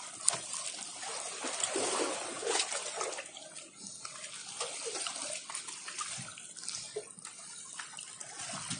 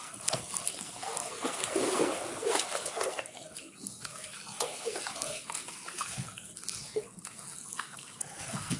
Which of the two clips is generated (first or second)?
second